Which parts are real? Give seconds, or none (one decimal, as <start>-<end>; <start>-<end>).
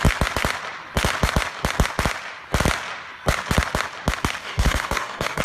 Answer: 0.0-4.4